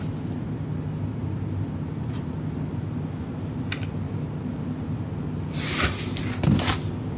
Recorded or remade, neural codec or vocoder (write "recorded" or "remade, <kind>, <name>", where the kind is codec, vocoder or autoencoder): recorded